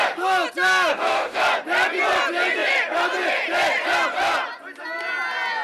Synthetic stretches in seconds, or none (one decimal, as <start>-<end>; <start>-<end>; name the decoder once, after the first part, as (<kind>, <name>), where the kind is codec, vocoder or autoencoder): 0.9-1.4 (codec, DAC)